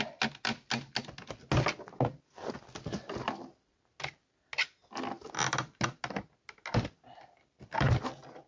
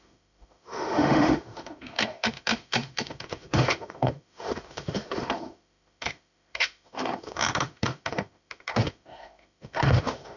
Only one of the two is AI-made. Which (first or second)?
second